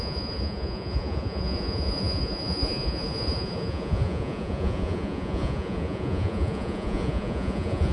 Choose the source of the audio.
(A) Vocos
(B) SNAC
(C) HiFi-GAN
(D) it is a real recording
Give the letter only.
A